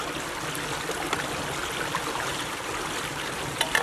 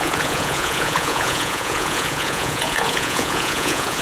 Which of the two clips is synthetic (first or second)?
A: second